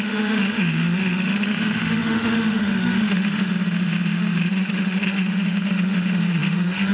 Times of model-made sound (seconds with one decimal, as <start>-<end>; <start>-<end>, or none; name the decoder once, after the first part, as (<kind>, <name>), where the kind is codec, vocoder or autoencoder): 0.0-6.9 (autoencoder, DAC-VAE)